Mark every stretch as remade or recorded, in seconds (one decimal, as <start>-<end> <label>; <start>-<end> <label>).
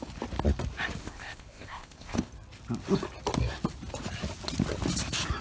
0.0-1.0 recorded; 1.0-2.3 remade; 2.3-5.4 recorded